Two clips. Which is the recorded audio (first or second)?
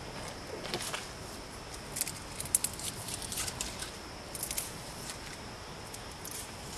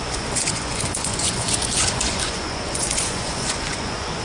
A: first